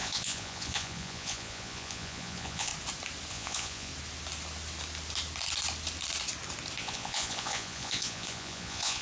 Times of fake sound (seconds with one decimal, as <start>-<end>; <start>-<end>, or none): 0.0-2.7; 3.3-3.9; 6.8-9.0